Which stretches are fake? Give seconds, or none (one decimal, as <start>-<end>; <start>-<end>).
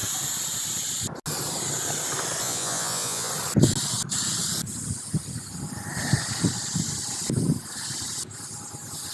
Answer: 2.4-3.3